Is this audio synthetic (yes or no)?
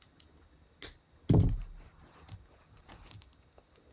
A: no